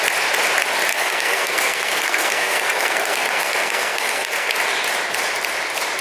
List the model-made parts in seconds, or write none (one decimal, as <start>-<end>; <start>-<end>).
0.9-4.5